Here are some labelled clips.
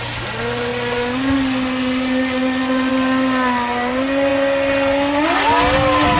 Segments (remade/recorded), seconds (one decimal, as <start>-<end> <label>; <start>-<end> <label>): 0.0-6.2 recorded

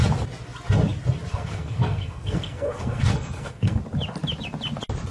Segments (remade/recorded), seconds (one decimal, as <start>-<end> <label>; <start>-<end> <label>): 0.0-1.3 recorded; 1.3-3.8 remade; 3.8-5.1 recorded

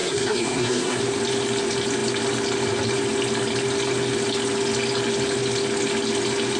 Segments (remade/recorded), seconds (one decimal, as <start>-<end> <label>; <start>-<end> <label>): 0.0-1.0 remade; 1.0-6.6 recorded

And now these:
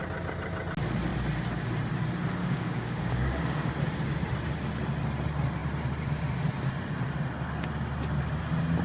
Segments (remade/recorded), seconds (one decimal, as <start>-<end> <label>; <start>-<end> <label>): 0.0-2.4 recorded; 2.4-3.7 remade; 3.7-8.8 recorded

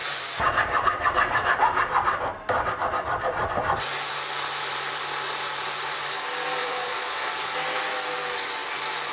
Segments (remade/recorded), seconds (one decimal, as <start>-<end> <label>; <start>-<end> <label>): 0.0-6.6 recorded; 6.6-7.3 remade; 7.3-9.1 recorded

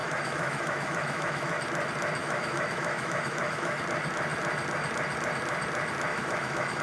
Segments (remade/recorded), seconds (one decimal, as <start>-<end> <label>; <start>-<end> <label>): 0.0-1.6 remade; 1.6-2.2 recorded; 2.2-3.8 remade; 3.8-6.1 recorded; 6.1-6.8 remade

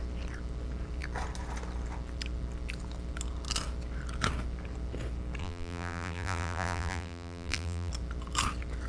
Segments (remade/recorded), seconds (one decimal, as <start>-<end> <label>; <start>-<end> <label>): 0.0-5.4 recorded; 5.4-7.9 remade; 7.9-8.9 recorded